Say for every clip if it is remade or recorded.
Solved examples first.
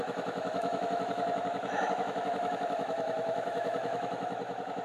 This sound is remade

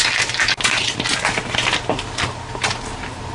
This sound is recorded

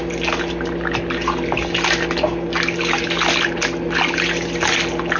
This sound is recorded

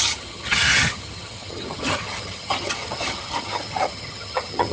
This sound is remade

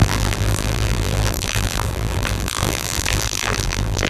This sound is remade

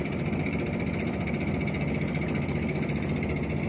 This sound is recorded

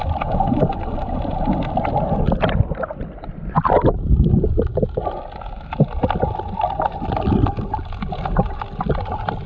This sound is recorded